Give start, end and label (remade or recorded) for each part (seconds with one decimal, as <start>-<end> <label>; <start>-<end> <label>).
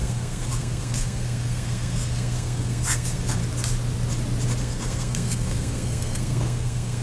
0.0-3.4 remade; 3.4-4.6 recorded; 4.6-7.0 remade